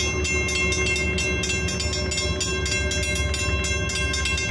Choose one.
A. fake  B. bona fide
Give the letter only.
B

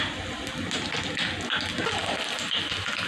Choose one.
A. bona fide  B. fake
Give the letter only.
A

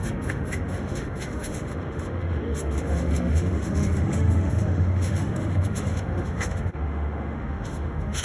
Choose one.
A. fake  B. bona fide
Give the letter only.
A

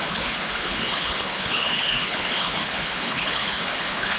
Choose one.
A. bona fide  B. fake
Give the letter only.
B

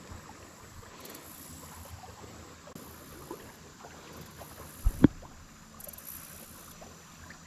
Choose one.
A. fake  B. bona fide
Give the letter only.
B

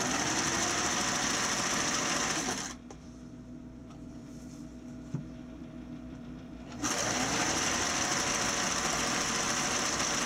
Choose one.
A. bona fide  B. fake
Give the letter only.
B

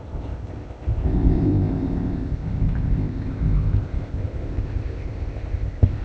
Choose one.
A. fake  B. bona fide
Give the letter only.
A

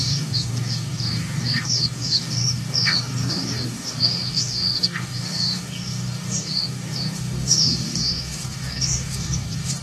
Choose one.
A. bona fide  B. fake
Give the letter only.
B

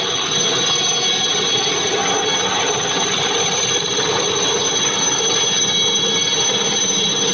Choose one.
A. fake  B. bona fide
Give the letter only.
B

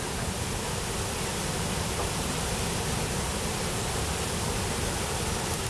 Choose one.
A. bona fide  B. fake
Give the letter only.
A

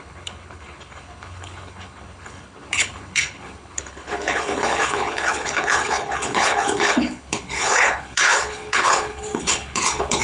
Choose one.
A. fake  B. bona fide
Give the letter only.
A